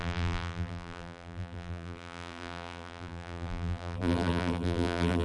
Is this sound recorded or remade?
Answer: remade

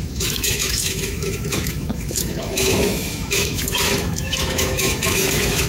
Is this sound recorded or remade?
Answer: remade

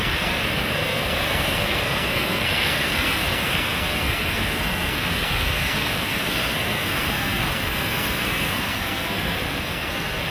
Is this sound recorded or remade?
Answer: remade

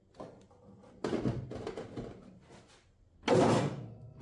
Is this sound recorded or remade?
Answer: recorded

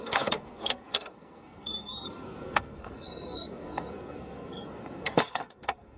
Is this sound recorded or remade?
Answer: remade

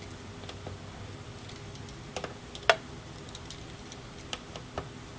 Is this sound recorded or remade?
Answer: recorded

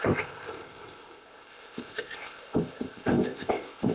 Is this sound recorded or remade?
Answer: remade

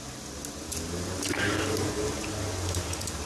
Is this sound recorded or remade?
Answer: recorded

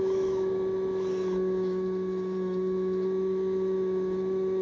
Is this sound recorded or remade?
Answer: remade